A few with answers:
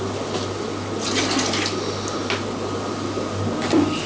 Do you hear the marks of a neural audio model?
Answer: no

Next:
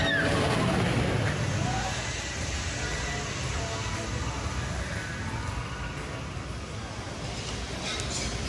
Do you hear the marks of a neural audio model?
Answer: no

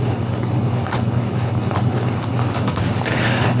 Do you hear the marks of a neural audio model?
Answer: yes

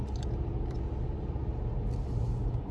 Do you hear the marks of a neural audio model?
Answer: no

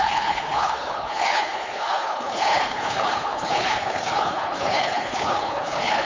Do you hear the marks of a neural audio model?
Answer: yes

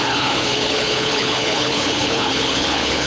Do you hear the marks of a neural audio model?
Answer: yes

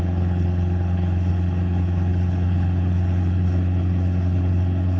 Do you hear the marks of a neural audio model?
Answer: yes